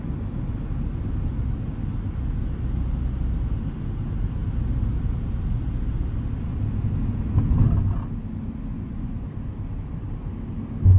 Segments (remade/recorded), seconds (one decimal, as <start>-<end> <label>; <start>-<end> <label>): 0.0-8.7 recorded; 8.7-9.3 remade; 9.3-11.0 recorded